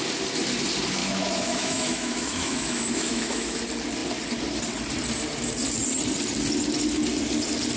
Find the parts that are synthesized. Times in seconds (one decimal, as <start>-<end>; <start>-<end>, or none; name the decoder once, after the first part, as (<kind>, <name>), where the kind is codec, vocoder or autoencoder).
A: 1.0-3.6 (autoencoder, DAC-VAE)